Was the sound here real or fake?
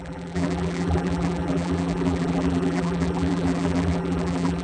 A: fake